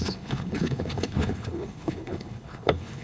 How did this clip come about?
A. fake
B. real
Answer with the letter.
A